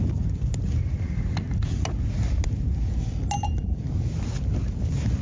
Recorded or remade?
recorded